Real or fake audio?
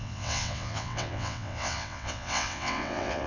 fake